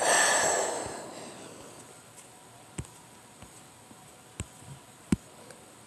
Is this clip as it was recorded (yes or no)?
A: yes